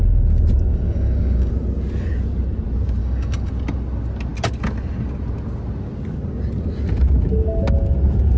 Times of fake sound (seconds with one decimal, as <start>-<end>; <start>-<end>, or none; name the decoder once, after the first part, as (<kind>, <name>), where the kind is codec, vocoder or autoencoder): 0.7-1.5 (codec, DAC); 3.0-3.5